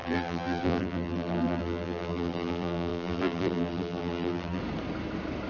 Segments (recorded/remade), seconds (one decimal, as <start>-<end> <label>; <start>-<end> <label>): 0.0-4.6 remade; 4.6-5.5 recorded